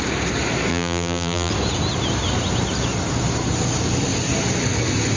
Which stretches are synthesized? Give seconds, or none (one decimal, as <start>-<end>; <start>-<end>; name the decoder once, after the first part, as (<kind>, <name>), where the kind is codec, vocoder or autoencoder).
0.7-1.5 (vocoder, BigVGAN v2)